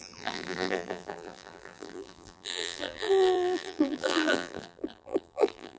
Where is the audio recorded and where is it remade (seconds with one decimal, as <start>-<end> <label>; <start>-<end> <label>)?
0.0-5.8 remade